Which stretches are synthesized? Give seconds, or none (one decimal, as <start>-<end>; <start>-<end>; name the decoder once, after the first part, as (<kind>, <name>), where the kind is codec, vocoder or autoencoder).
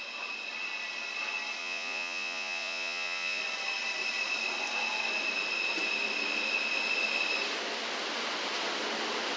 1.6-3.4 (vocoder, Vocos)